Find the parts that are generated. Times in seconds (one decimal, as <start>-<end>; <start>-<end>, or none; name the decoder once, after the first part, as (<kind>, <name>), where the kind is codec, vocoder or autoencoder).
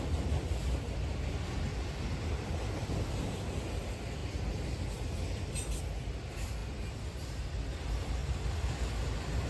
none